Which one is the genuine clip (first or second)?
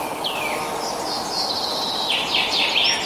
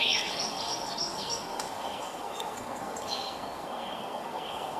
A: first